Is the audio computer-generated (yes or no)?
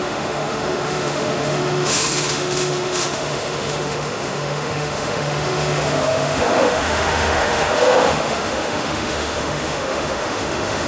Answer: yes